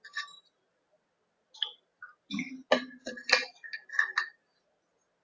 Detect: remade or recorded recorded